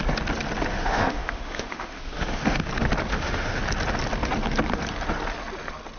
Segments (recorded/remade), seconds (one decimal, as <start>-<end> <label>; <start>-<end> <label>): 0.0-0.7 recorded; 0.7-2.7 remade; 2.7-3.1 recorded; 3.1-3.6 remade; 3.6-6.0 recorded